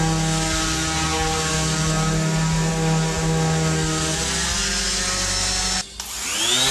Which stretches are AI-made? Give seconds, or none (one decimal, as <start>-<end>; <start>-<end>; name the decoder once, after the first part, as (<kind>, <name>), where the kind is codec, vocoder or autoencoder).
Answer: none